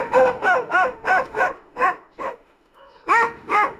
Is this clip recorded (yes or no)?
no